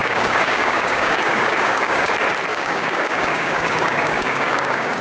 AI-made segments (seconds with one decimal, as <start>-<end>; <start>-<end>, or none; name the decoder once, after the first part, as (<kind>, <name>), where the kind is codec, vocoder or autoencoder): 0.0-2.1 (codec, DAC); 2.5-5.0